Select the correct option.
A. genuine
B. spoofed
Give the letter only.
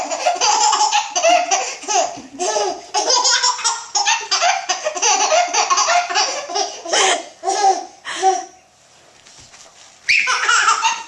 A